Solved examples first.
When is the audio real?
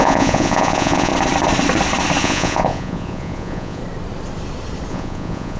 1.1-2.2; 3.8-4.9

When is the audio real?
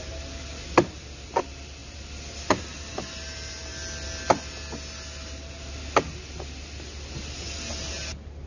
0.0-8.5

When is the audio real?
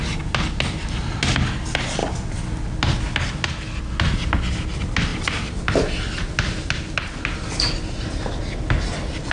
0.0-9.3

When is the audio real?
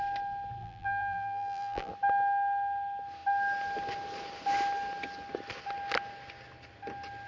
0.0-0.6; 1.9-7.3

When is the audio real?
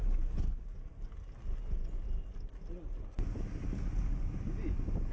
0.0-5.1